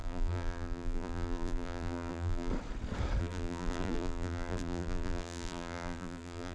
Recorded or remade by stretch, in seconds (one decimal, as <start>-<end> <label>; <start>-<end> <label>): 0.0-2.5 remade; 2.5-3.2 recorded; 3.2-6.5 remade